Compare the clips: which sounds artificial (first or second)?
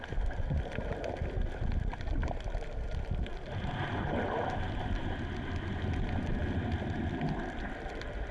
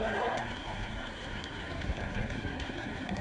second